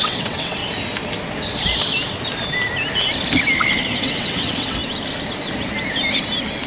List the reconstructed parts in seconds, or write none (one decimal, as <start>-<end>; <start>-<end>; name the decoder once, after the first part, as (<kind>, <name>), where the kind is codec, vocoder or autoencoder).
0.0-0.6 (vocoder, WaveNeXt); 4.0-4.8